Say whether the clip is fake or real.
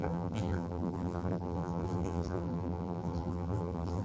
fake